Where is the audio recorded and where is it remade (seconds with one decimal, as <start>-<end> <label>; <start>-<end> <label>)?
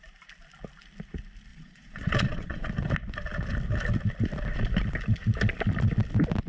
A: 0.0-1.5 recorded; 1.5-2.7 remade; 2.7-6.5 recorded